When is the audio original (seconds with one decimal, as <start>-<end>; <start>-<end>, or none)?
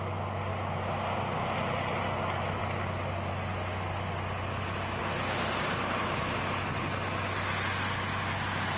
0.0-8.8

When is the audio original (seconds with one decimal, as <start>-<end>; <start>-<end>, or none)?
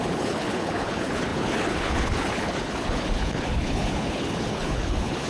none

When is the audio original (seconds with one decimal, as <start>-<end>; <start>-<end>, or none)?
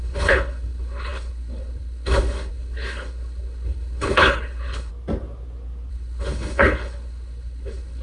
4.9-5.9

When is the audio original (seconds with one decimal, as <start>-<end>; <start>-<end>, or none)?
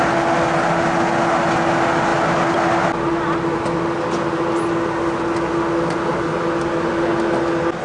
0.0-7.8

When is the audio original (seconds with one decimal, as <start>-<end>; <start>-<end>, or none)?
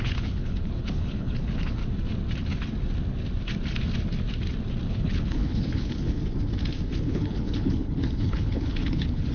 1.8-4.9; 6.2-7.0